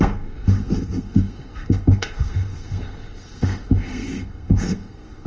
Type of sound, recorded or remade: remade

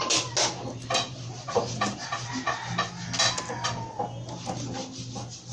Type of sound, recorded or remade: recorded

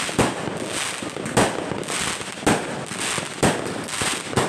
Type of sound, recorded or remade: recorded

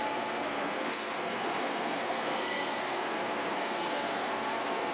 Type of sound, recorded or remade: remade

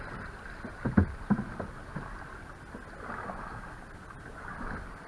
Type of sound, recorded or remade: recorded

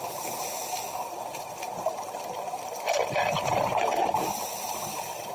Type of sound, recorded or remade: recorded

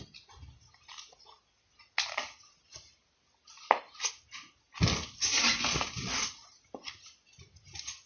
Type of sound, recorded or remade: recorded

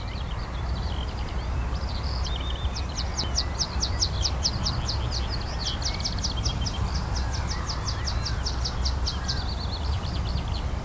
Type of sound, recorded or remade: recorded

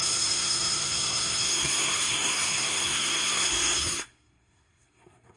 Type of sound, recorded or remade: remade